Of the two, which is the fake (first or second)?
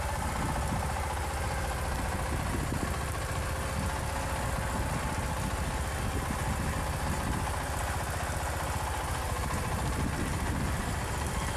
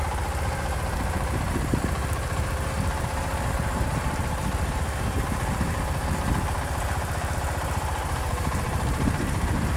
second